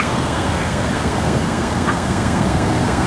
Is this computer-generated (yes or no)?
yes